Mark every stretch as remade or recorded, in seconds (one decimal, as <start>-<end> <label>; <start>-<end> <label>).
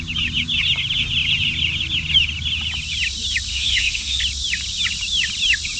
0.0-3.5 recorded; 3.5-4.2 remade; 4.2-5.8 recorded